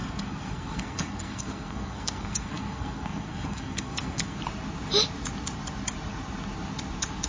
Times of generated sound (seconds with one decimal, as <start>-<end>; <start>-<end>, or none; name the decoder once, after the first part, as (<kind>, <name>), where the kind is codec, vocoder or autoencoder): 0.0-4.4 (codec, SNAC)